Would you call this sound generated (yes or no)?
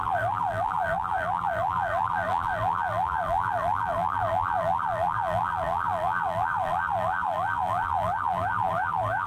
yes